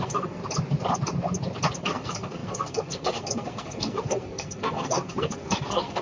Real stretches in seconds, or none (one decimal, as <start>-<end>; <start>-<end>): 0.4-1.8